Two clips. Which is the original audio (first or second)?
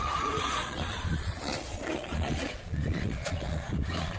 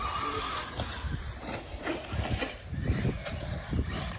second